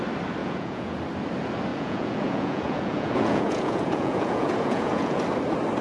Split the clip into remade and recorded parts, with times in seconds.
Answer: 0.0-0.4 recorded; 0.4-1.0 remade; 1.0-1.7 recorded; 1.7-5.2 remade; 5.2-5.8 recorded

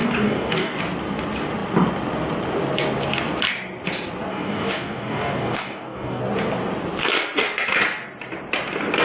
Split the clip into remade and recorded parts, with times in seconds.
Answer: 0.0-0.8 remade; 0.8-4.3 recorded; 4.3-6.2 remade; 6.2-9.0 recorded